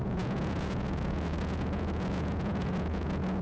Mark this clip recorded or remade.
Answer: remade